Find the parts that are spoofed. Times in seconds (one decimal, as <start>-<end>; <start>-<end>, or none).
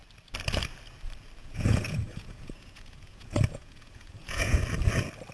1.4-4.6